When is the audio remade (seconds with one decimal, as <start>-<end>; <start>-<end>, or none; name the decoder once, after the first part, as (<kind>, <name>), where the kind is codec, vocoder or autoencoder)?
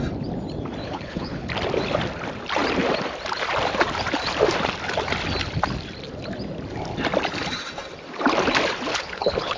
0.8-1.5 (codec, HILCodec); 8.9-9.6